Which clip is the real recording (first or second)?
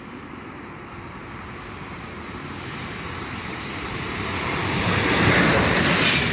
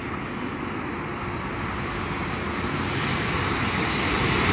second